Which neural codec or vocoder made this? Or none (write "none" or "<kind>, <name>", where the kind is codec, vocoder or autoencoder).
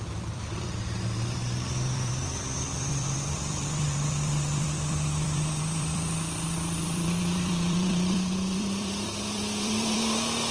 vocoder, BigVGAN v2